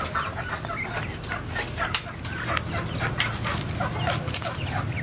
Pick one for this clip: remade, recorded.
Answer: recorded